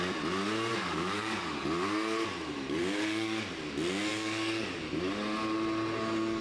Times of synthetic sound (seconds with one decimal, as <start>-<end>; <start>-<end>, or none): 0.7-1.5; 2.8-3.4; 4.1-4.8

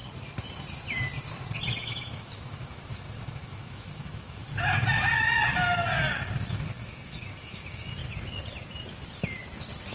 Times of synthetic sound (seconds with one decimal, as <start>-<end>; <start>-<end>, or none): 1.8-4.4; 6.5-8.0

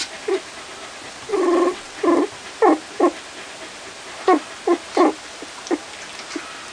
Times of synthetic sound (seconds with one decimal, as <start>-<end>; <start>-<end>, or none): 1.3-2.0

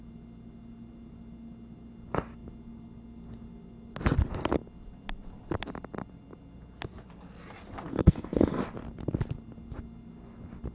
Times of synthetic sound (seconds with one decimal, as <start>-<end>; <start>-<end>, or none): 7.9-8.6